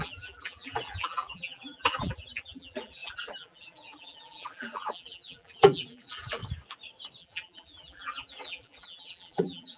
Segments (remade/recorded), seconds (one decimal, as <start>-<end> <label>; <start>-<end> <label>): 0.0-6.4 remade; 6.4-7.2 recorded; 7.2-9.8 remade